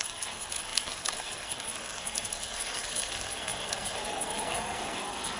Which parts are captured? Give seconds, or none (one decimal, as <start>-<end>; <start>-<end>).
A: none

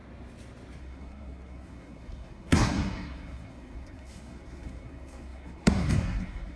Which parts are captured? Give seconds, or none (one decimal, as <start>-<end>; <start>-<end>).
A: 0.0-0.8

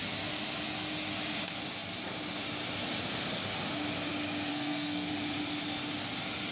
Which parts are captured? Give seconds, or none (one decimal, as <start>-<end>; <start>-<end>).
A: 0.0-4.5; 5.1-6.5

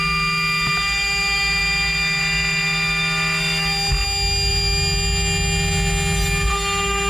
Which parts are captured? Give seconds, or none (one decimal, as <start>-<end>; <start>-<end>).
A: 0.0-7.1